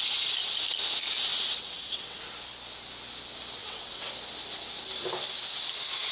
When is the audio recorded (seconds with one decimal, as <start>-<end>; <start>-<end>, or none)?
0.0-1.3; 2.2-3.6; 4.1-6.1

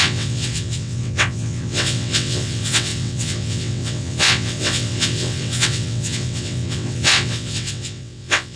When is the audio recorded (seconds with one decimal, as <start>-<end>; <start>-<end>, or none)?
none

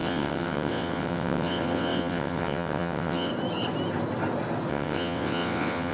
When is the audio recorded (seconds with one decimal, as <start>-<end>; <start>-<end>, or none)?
3.3-4.7

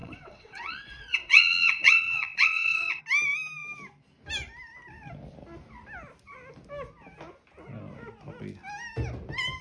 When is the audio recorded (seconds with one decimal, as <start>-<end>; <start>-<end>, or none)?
3.0-9.6